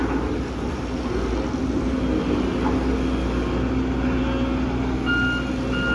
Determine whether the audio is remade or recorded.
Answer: recorded